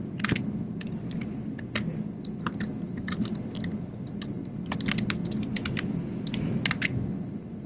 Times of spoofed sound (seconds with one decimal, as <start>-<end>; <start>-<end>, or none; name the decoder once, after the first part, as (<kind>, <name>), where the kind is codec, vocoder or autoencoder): none